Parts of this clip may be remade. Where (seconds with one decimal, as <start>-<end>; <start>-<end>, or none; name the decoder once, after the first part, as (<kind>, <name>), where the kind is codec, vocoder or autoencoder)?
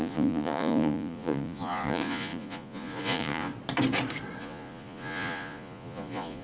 0.0-3.5 (vocoder, Vocos); 4.4-6.4